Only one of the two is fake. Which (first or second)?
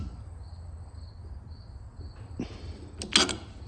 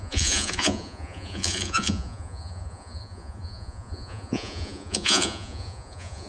second